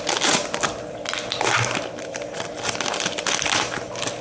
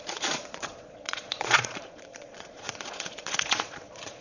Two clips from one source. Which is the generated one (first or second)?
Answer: second